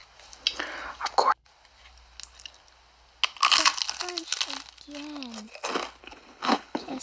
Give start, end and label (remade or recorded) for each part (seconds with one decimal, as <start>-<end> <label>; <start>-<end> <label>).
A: 0.0-6.0 recorded; 6.0-7.0 remade